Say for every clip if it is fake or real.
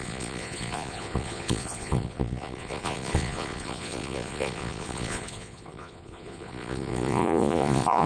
fake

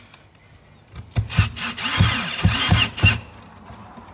real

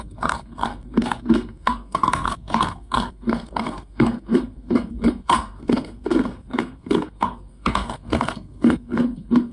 fake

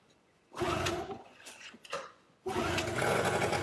fake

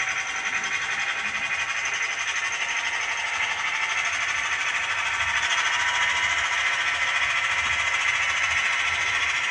real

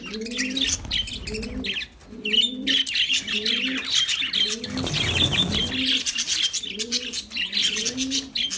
real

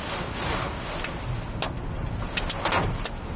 real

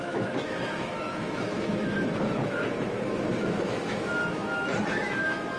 fake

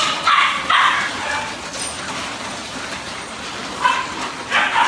real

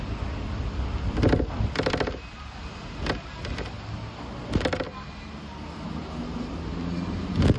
real